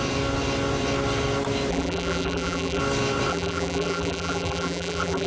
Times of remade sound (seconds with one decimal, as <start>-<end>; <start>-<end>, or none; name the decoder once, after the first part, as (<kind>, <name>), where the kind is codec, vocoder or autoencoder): 1.7-2.8 (vocoder, BigVGAN v2); 3.3-5.3

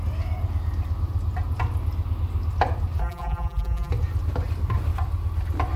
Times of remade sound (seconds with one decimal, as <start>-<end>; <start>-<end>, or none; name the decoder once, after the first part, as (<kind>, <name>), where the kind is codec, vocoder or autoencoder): 3.0-3.9 (vocoder, BigVGAN v2)

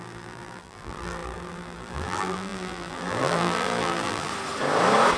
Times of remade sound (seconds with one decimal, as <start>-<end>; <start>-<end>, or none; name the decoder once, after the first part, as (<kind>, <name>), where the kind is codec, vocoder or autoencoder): 0.0-4.3 (vocoder, BigVGAN v2)

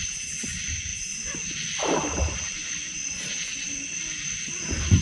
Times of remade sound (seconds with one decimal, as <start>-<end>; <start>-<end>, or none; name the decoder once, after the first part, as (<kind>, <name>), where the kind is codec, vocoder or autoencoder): none

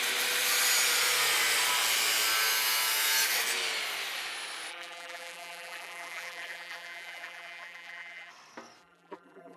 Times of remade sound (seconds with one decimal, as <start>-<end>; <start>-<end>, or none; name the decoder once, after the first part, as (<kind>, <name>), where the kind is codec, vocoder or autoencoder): 4.7-8.3 (vocoder, BigVGAN v2); 8.8-9.6

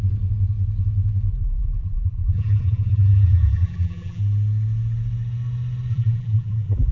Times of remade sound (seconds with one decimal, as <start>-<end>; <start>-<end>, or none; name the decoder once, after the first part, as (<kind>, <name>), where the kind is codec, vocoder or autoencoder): 1.3-4.2 (vocoder, BigVGAN v2); 5.9-6.9

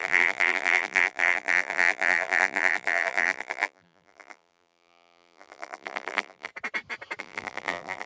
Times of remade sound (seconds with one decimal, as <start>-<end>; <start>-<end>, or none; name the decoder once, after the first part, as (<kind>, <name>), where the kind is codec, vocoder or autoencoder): 0.0-6.5 (vocoder, BigVGAN v2); 7.2-8.1